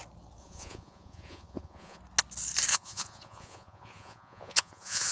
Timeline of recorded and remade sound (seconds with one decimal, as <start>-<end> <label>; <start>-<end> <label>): 0.0-0.4 recorded; 0.4-2.0 remade; 2.0-2.7 recorded; 2.7-5.1 remade